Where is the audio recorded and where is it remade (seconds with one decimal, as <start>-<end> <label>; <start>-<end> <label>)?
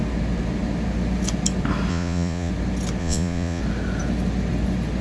0.0-1.9 recorded; 1.9-2.5 remade; 2.5-3.0 recorded; 3.0-3.6 remade; 3.6-5.0 recorded